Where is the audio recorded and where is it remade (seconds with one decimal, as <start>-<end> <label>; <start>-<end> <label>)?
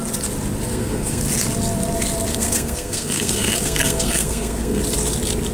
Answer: 0.0-0.7 recorded; 0.7-1.2 remade; 1.2-2.3 recorded; 2.3-4.8 remade; 4.8-5.5 recorded